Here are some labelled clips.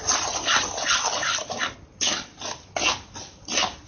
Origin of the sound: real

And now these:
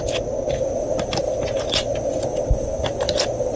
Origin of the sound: real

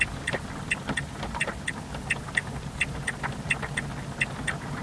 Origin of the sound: real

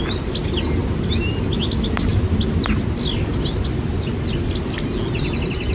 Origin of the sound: real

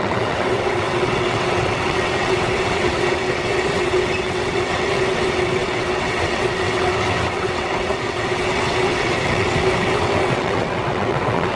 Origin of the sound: fake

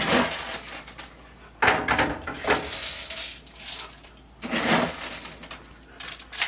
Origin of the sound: real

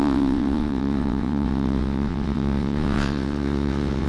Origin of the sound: fake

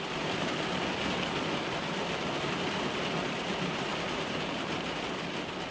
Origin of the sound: real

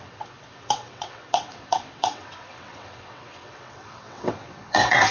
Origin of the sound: fake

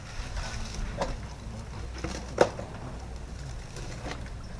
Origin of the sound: real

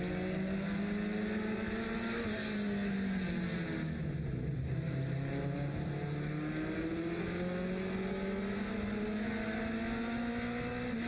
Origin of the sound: real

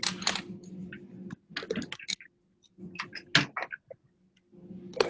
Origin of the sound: real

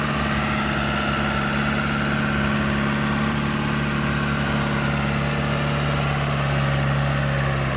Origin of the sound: real